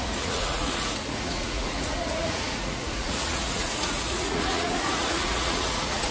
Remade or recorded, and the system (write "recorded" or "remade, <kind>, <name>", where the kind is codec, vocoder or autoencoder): remade, vocoder, Vocos